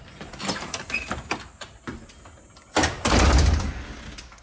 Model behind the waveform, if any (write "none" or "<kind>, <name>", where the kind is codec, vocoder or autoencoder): none